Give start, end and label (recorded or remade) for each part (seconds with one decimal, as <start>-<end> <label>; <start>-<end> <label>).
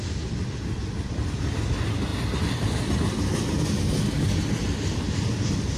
0.0-5.8 recorded